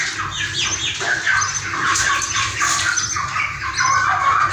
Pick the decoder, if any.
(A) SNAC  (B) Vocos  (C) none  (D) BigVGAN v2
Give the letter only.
C